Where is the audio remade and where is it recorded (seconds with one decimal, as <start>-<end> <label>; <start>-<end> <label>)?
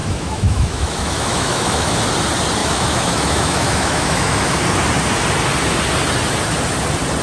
0.0-2.0 remade; 2.0-2.6 recorded; 2.6-4.6 remade; 4.6-7.2 recorded